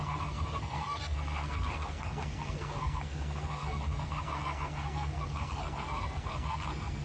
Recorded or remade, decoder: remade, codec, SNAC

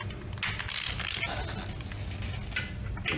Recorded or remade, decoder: recorded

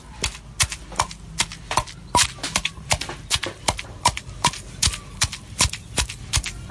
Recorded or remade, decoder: recorded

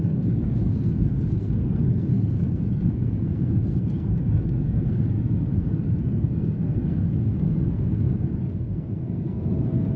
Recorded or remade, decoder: remade, codec, SNAC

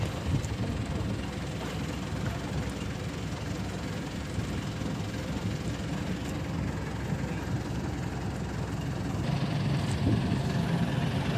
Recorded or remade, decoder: recorded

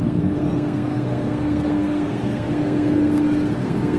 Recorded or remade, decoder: remade, codec, SNAC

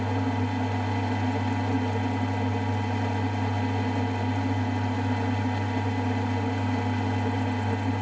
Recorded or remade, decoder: recorded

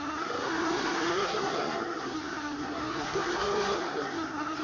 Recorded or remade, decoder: remade, codec, SNAC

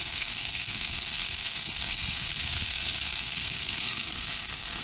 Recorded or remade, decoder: remade, codec, SNAC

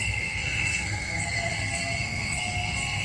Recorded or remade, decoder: remade, codec, SNAC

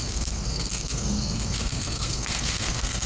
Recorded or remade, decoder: remade, codec, SNAC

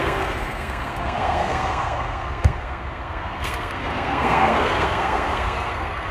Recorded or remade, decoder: remade, codec, SNAC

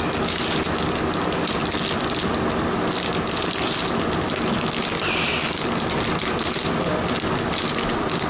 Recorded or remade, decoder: recorded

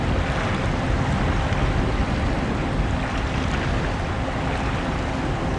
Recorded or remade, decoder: recorded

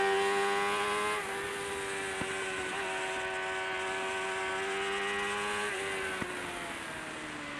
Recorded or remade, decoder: recorded